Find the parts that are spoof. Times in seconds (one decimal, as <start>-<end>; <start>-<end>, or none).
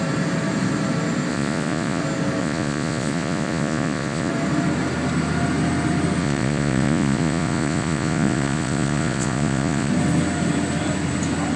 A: 1.3-2.0; 2.4-4.3; 6.2-9.9